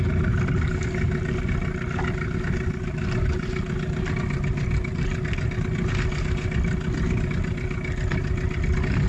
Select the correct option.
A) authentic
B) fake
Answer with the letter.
A